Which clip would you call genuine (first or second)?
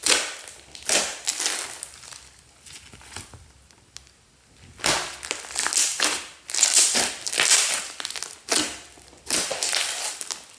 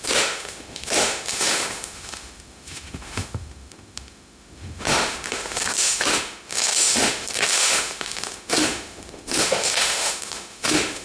first